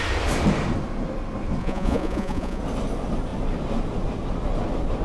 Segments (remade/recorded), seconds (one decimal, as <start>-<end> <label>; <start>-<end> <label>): 0.0-1.6 recorded; 1.6-2.6 remade; 2.6-5.0 recorded